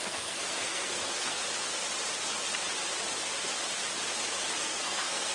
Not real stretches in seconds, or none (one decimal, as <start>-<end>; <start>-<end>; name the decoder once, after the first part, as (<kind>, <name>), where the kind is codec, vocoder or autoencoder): 0.0-1.4 (codec, SNAC); 4.6-5.3